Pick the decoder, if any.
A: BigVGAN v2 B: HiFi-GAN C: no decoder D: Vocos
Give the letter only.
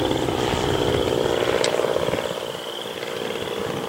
C